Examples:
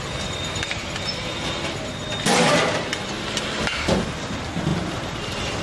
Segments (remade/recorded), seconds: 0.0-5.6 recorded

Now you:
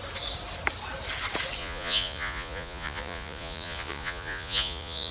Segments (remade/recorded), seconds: 0.0-1.6 recorded; 1.6-5.1 remade